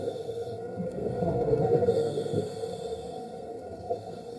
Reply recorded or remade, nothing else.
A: remade